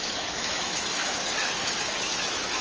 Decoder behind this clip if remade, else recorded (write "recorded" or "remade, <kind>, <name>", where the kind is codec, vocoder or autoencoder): remade, autoencoder, DAC-VAE